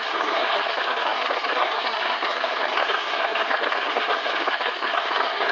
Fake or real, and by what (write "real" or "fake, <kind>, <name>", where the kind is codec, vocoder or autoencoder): fake, codec, SNAC